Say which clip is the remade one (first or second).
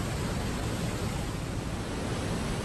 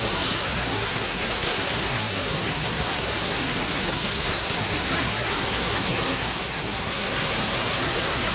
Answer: second